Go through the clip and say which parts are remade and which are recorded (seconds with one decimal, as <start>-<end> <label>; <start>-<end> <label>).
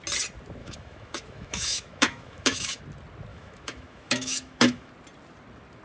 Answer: 0.0-0.6 recorded; 0.6-2.8 remade; 2.8-3.3 recorded; 3.3-4.9 remade; 4.9-5.8 recorded